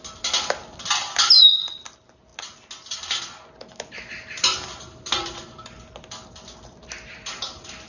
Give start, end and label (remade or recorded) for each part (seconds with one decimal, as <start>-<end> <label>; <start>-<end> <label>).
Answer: 0.0-7.9 recorded